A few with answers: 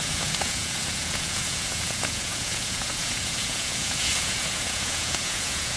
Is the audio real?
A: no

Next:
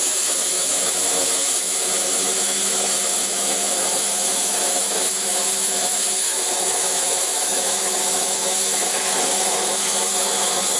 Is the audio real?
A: no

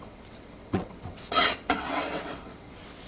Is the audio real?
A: no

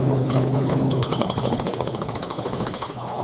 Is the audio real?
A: no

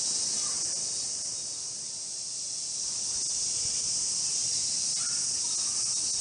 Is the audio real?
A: yes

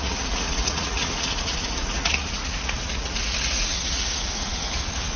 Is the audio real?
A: no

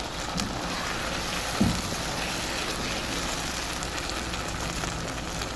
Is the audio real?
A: yes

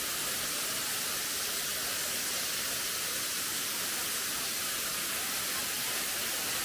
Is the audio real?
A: yes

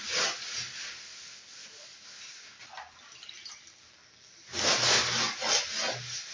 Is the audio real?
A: yes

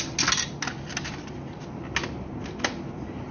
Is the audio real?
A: yes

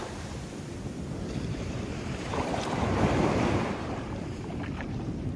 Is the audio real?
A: no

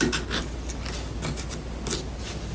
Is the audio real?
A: yes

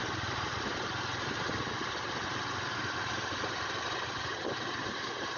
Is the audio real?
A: no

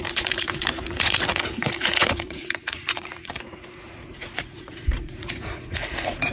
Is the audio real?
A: no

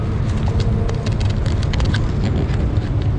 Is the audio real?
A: yes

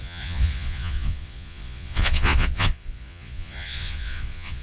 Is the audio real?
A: no